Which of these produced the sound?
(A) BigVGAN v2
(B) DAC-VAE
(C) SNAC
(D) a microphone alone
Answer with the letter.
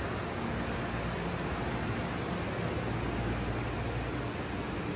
D